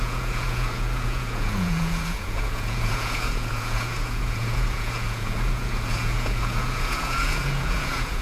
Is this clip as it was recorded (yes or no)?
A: no